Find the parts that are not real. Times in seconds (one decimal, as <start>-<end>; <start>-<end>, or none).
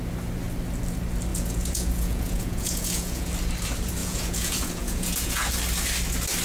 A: 1.3-3.3; 4.0-5.5